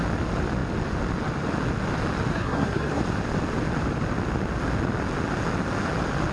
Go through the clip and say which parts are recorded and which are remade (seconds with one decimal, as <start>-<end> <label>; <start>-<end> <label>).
0.0-2.3 recorded; 2.3-3.0 remade; 3.0-6.3 recorded